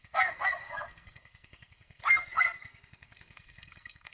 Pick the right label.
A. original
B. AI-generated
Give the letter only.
B